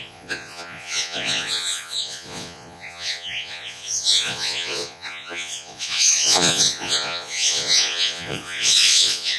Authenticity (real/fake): fake